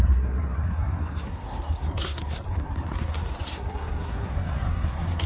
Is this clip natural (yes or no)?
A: no